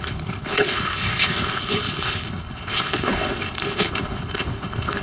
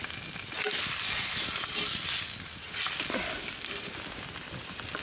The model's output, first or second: first